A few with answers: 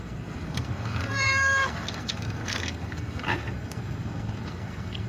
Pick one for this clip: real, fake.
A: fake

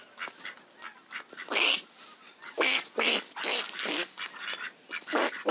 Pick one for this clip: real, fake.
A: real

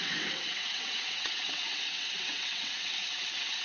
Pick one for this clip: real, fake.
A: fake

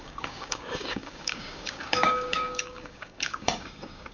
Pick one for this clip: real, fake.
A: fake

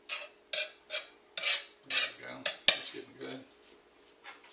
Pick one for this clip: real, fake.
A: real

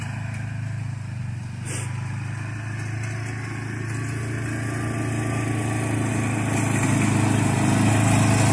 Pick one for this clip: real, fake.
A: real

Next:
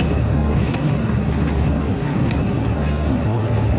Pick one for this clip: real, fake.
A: fake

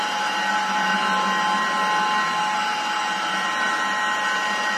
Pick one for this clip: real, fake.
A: real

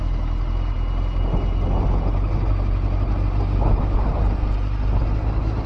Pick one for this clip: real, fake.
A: real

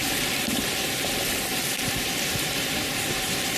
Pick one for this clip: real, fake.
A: real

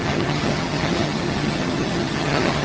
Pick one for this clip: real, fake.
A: fake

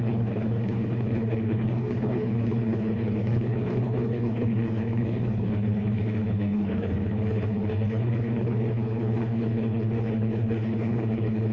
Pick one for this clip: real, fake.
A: fake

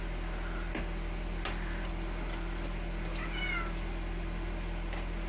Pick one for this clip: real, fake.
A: real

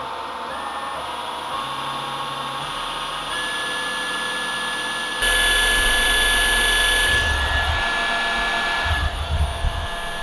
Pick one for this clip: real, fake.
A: real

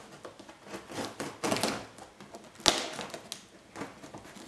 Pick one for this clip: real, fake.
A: real